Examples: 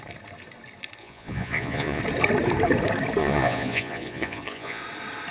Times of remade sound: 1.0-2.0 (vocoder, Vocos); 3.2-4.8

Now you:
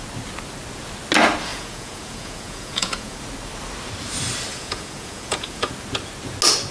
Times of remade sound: 1.5-3.2 (vocoder, Vocos); 4.5-5.7

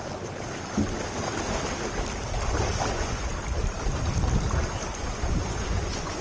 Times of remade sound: 2.9-3.3 (vocoder, Vocos); 5.0-6.2

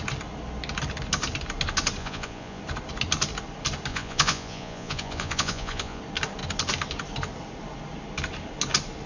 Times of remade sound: 2.0-2.6 (vocoder, Vocos); 3.9-6.0

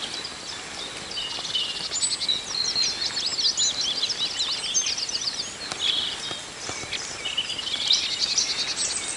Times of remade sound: none

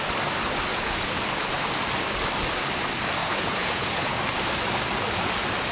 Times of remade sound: 0.7-1.2 (vocoder, Vocos); 3.2-4.2

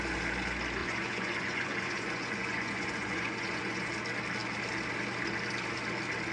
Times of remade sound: 0.8-3.9 (vocoder, Vocos)